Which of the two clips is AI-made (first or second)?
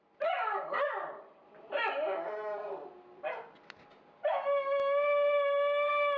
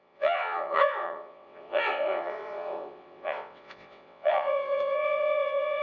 second